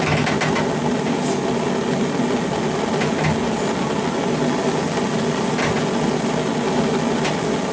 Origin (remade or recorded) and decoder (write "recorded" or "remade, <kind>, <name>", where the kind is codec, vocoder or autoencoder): recorded